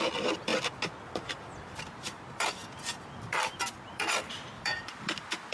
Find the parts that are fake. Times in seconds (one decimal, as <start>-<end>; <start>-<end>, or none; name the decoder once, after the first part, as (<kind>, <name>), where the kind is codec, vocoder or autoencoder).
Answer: 0.0-0.5 (vocoder, BigVGAN v2); 1.9-2.6; 3.2-5.5